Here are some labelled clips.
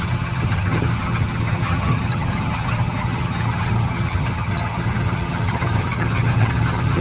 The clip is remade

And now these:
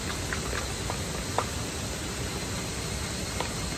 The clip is recorded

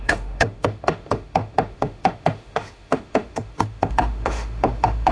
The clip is remade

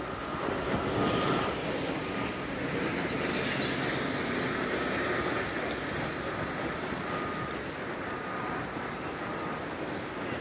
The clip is recorded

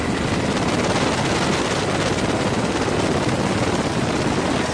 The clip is recorded